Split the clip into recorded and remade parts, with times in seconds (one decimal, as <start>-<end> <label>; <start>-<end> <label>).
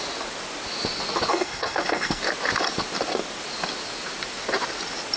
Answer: 0.0-1.3 recorded; 1.3-2.2 remade; 2.2-5.2 recorded